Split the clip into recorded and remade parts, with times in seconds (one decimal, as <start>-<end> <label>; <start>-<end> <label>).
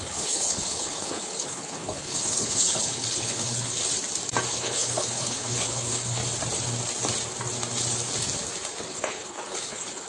0.0-3.8 remade; 3.8-4.5 recorded; 4.5-6.2 remade; 6.2-8.9 recorded; 8.9-10.1 remade